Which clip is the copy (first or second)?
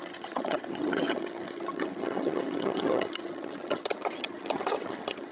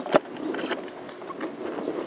first